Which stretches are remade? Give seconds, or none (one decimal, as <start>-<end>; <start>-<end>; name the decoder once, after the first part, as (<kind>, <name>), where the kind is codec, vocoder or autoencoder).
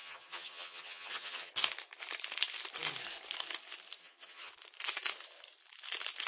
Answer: 0.0-1.5 (vocoder, HiFi-GAN); 4.0-4.5